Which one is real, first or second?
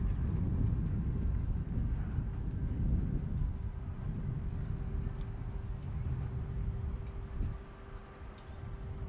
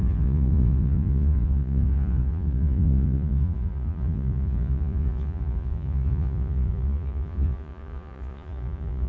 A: first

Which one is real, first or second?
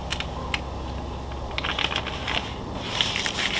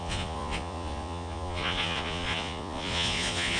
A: first